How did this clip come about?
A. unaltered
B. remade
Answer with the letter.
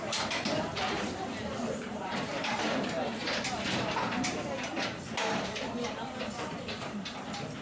B